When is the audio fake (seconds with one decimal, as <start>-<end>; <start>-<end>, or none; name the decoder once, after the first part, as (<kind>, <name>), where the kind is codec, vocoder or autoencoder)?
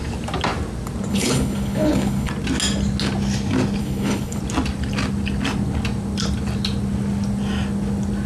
1.1-2.3 (codec, HILCodec); 3.8-4.4